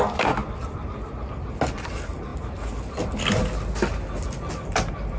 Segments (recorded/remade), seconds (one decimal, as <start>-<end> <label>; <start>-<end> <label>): 0.0-0.4 remade; 0.4-1.7 recorded; 1.7-2.3 remade; 2.3-4.5 recorded; 4.5-5.2 remade